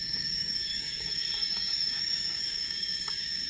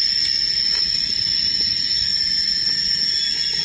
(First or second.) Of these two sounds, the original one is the second